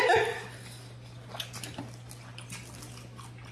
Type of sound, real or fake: real